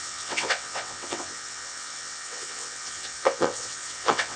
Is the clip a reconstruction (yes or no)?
yes